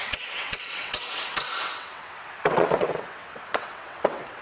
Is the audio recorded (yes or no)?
no